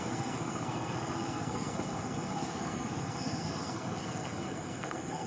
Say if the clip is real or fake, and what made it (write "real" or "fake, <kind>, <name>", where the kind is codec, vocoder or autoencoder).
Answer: fake, codec, SNAC